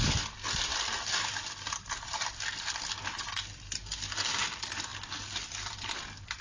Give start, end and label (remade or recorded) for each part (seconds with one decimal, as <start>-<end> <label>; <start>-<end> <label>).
0.0-0.7 recorded; 0.7-4.4 remade; 4.4-6.4 recorded